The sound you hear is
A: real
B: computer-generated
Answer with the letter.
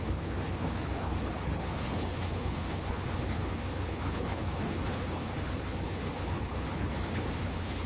B